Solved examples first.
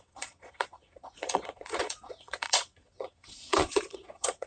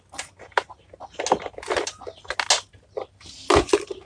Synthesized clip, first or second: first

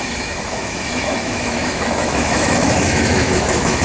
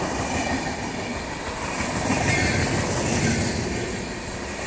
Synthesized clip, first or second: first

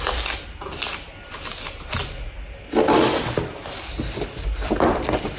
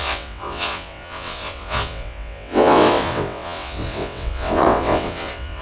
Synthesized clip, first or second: second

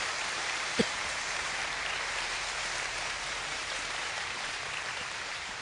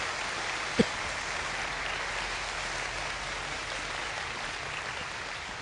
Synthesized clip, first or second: first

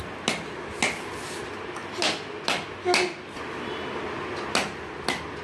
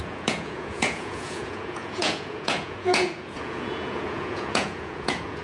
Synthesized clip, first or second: second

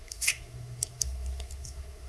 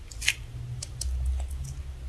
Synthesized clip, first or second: first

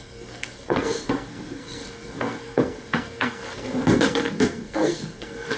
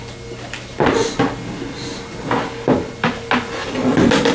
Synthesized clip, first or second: first